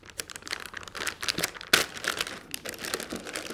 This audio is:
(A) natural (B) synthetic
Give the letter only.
A